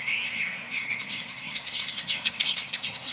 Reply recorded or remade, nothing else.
remade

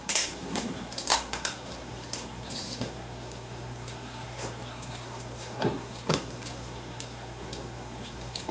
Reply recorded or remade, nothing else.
remade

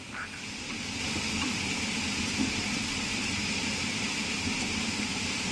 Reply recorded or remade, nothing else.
recorded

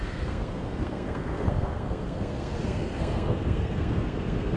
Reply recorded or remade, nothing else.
remade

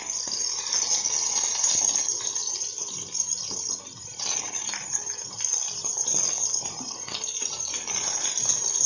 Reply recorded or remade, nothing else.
recorded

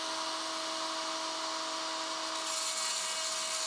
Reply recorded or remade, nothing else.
recorded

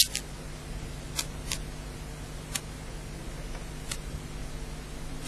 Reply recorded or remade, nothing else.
recorded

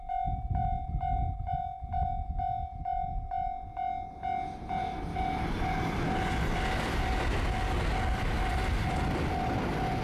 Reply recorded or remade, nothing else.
recorded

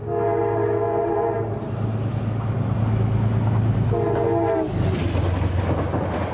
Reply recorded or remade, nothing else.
recorded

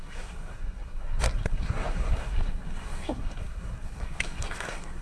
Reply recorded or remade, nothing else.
remade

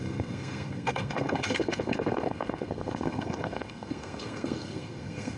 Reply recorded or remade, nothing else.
remade